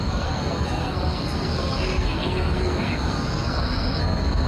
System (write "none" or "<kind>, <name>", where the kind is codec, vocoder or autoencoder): codec, SNAC